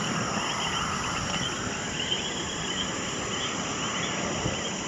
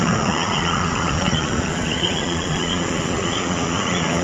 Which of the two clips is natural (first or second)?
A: first